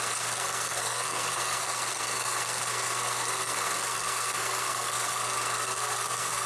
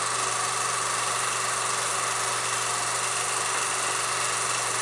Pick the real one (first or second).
second